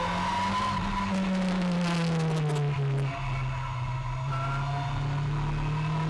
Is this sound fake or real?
real